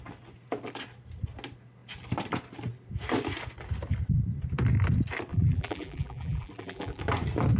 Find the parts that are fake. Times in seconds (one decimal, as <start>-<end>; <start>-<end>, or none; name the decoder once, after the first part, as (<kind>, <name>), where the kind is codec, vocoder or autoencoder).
5.3-7.0 (vocoder, BigVGAN v2)